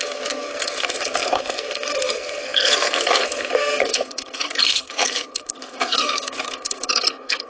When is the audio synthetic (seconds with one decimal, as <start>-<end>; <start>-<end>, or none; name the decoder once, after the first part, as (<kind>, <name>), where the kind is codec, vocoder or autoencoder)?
0.0-7.5 (codec, SNAC)